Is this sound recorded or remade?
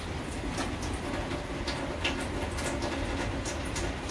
recorded